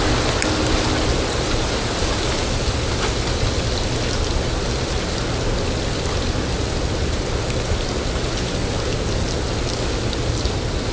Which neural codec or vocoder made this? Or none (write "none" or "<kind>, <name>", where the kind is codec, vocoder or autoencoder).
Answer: none